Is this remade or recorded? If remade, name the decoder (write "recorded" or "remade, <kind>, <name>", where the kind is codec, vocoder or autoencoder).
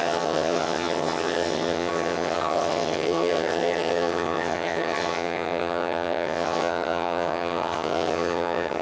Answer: remade, vocoder, HiFi-GAN